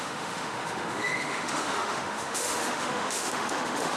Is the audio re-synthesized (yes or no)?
yes